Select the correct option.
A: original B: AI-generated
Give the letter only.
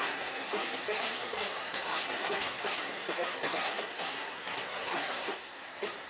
B